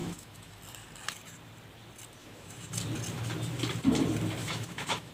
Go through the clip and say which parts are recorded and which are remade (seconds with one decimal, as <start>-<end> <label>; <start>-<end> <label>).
0.0-0.6 remade; 0.6-2.2 recorded; 2.2-2.7 remade; 2.7-4.4 recorded; 4.4-5.1 remade

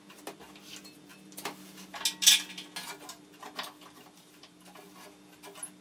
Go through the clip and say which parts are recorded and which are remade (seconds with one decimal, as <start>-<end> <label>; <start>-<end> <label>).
0.0-5.8 recorded

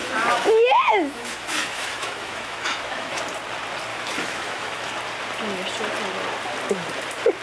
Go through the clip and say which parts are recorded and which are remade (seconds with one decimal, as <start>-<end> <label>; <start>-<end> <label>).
0.0-3.2 remade; 3.2-3.9 recorded; 3.9-4.9 remade; 4.9-7.4 recorded

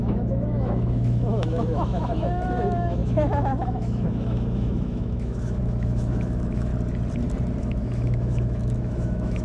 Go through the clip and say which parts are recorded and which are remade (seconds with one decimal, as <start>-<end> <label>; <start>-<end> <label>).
0.0-6.7 remade; 6.7-7.6 recorded; 7.6-9.4 remade

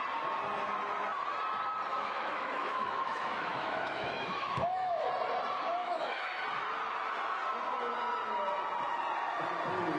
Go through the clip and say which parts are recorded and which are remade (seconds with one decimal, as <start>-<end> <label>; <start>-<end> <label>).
0.0-1.9 recorded; 1.9-5.1 remade; 5.1-5.8 recorded; 5.8-6.4 remade; 6.4-10.0 recorded